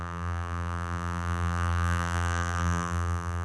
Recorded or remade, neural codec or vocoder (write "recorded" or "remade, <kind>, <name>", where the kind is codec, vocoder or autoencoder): remade, vocoder, BigVGAN v2